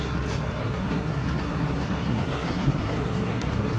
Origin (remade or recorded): remade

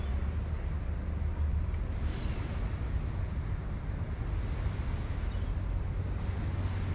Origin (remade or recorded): recorded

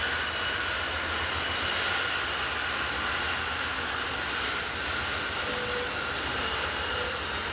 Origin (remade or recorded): recorded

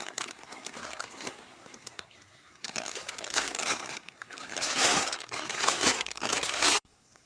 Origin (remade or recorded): remade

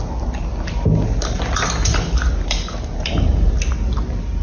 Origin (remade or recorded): recorded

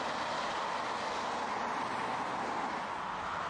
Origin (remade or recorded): recorded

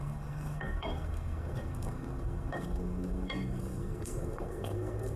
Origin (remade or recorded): remade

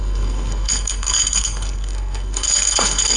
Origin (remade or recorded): remade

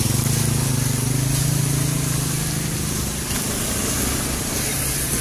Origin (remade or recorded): recorded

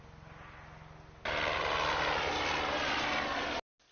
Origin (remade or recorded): recorded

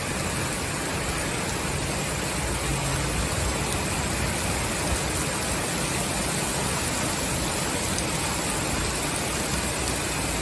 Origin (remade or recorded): recorded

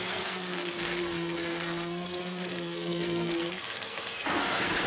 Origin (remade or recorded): remade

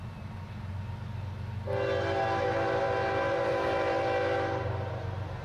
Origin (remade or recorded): recorded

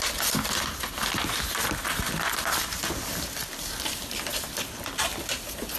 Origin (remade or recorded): recorded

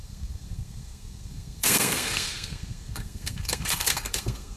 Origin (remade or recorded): remade